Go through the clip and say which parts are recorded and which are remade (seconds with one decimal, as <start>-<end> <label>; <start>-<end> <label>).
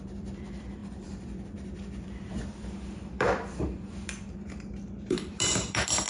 0.0-6.1 remade